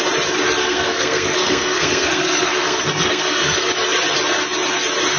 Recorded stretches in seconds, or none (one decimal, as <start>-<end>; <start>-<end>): 0.0-0.6; 3.7-5.2